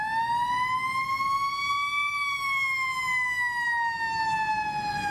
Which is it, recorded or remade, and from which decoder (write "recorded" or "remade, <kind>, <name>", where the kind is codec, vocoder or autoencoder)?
recorded